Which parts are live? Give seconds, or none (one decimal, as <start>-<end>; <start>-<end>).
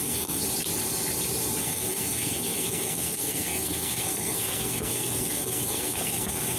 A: 0.4-1.6